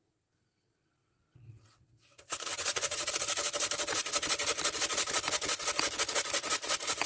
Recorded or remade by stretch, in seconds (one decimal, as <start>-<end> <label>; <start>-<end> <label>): 0.0-1.0 recorded; 1.0-3.1 remade; 3.1-7.1 recorded